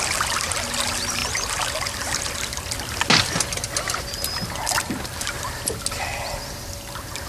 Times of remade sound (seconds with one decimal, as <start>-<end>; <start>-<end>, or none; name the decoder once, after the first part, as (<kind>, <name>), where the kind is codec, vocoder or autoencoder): none